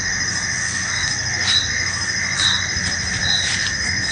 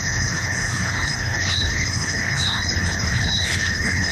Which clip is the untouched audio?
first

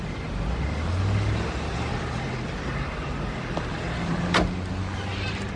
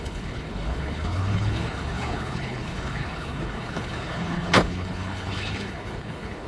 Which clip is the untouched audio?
first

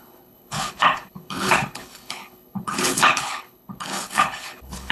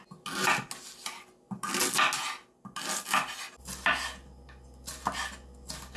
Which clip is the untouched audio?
second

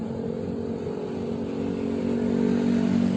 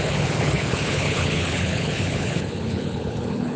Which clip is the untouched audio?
first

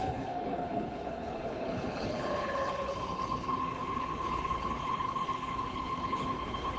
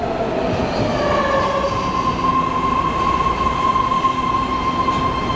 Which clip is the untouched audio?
second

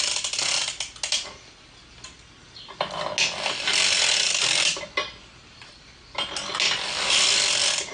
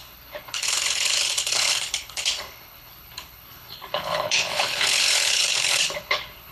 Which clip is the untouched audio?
first